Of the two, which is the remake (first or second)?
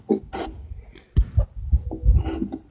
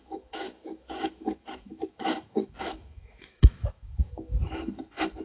second